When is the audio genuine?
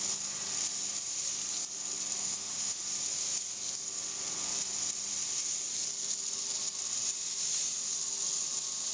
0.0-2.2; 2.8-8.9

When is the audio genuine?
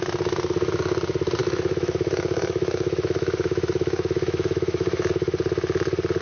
0.0-1.4; 5.1-6.2